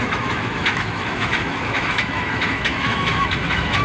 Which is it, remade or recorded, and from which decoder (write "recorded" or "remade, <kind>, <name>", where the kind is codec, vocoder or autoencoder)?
remade, autoencoder, DAC-VAE